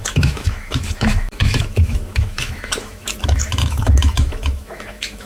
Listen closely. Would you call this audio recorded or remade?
remade